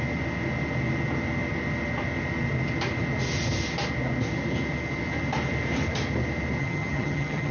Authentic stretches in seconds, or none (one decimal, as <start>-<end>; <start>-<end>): 0.0-6.6